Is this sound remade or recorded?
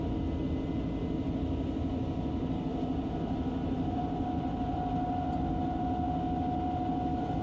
recorded